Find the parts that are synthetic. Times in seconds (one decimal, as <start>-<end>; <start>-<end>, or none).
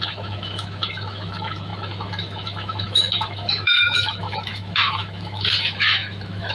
0.0-6.5